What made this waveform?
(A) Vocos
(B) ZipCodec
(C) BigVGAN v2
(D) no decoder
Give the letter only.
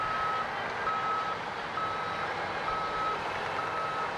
D